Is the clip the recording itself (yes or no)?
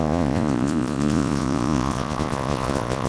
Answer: no